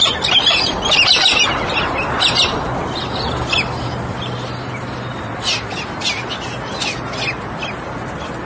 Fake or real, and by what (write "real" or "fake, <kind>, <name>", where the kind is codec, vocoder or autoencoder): real